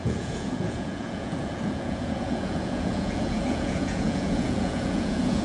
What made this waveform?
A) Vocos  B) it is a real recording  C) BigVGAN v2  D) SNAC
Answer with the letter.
A